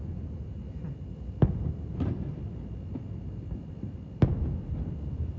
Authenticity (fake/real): real